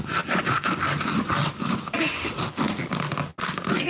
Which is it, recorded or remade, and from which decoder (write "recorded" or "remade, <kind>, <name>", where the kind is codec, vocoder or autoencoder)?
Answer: recorded